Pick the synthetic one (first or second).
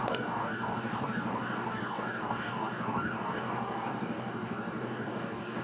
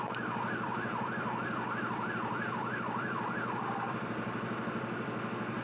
first